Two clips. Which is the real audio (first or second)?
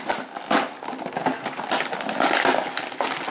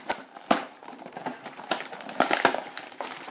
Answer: first